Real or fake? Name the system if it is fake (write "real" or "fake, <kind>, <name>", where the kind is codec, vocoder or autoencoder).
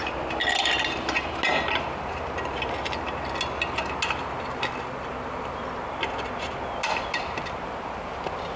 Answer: real